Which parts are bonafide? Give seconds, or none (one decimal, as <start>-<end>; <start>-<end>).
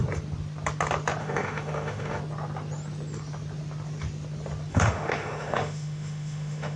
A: 0.0-1.2; 2.2-4.7